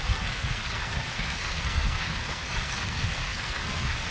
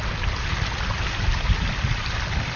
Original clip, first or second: second